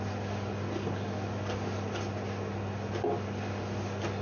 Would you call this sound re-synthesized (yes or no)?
no